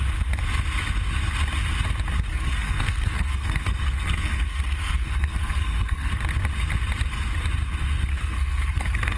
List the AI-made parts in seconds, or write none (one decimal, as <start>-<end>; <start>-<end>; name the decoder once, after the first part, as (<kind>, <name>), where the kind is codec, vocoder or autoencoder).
2.3-6.1 (codec, SNAC); 8.1-9.2